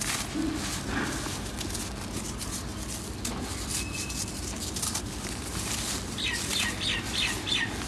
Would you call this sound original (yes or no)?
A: yes